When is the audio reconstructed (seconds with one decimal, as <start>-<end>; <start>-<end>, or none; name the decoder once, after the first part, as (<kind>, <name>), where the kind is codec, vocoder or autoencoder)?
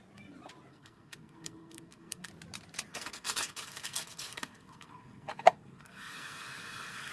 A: 0.7-2.3 (codec, SNAC); 2.9-7.1